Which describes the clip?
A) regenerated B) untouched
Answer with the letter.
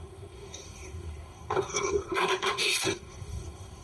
A